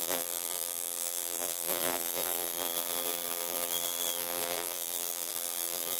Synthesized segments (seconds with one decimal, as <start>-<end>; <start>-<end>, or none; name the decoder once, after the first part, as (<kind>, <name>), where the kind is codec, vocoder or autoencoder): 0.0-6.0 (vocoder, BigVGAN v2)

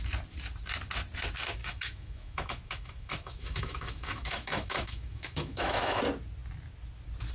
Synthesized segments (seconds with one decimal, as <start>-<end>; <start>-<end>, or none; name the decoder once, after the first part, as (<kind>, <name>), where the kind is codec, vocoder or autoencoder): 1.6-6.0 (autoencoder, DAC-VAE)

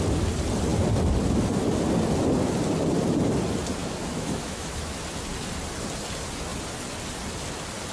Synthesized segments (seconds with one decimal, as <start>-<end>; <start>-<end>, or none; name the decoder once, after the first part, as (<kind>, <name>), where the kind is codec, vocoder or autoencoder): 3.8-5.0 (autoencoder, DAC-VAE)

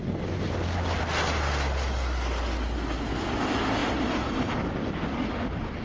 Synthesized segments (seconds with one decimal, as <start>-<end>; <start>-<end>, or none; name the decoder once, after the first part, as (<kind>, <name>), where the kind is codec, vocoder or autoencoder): none

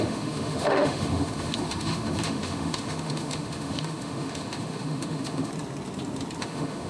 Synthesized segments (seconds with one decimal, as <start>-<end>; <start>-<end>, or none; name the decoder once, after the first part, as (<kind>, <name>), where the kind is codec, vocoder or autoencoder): 0.0-5.5 (autoencoder, DAC-VAE); 6.4-6.9